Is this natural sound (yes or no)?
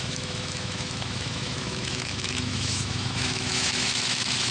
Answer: no